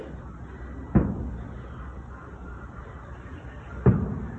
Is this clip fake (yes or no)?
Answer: no